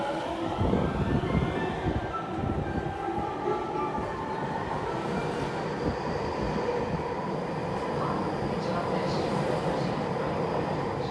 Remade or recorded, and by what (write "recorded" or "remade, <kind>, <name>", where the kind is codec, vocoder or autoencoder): recorded